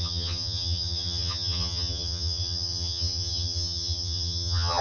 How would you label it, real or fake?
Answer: fake